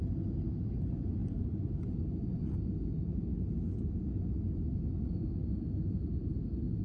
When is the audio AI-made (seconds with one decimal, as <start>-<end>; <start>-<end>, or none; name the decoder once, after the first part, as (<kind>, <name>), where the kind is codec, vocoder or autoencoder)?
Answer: none